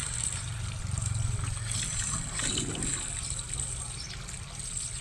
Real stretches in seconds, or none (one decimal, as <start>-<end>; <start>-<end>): 3.0-5.0

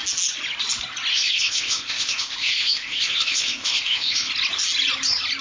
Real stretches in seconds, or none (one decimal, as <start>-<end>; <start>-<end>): 0.0-1.1; 4.3-5.4

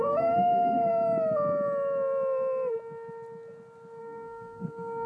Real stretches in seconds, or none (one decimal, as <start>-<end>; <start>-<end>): 0.9-4.0

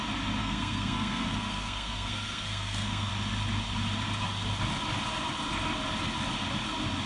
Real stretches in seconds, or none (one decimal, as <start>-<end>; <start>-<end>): 0.0-0.4; 3.1-7.1

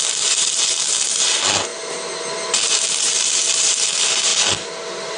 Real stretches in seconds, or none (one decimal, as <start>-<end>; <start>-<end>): 0.0-5.2

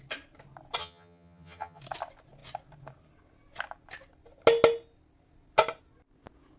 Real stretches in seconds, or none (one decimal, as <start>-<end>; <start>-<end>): 0.0-0.8; 1.8-6.6